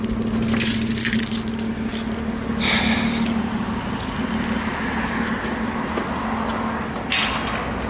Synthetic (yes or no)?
no